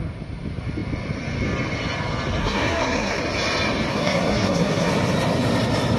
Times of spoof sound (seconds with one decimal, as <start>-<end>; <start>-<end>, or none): 2.4-3.2; 3.9-4.9